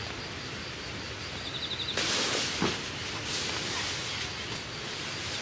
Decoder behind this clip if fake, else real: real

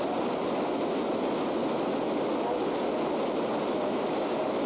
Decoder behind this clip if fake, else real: real